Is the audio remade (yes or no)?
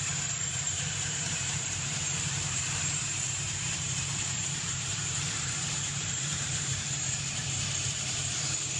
yes